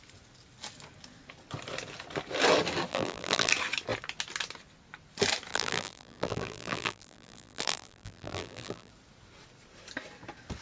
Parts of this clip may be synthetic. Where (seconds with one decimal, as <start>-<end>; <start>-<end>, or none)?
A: 2.9-3.5; 5.5-8.9